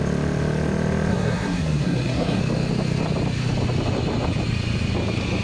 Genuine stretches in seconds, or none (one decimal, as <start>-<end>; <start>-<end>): 0.0-1.1; 2.4-5.4